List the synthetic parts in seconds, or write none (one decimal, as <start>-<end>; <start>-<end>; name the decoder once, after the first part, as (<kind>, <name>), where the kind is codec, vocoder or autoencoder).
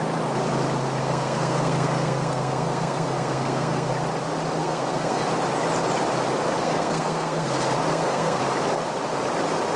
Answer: 1.0-3.9 (codec, SNAC); 4.6-5.2; 6.6-7.5; 7.9-8.4